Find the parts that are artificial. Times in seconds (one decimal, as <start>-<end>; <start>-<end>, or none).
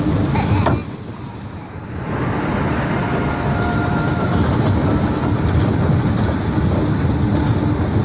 none